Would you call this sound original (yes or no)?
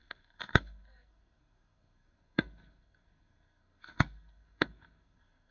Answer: no